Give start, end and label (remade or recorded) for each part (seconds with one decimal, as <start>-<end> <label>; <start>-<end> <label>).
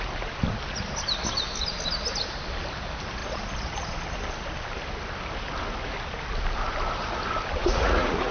0.0-7.6 recorded; 7.6-8.3 remade